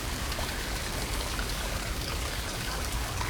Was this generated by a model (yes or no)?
yes